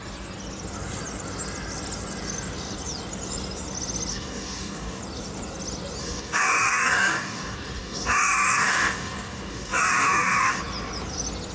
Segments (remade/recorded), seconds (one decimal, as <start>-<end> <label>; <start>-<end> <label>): 0.0-4.1 recorded; 4.1-5.0 remade; 5.0-6.0 recorded; 6.0-10.6 remade; 10.6-11.5 recorded